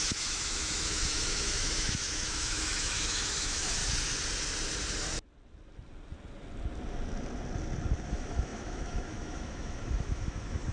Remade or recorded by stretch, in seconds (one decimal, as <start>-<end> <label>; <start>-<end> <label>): 0.0-3.8 remade; 3.8-8.1 recorded; 8.1-10.7 remade